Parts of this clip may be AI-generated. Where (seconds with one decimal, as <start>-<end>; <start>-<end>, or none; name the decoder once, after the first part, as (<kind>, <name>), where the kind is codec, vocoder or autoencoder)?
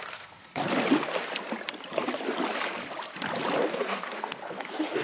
0.0-0.6 (codec, SNAC); 3.6-5.0